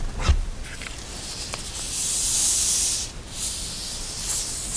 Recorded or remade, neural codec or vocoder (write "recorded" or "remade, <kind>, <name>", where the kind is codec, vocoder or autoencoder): recorded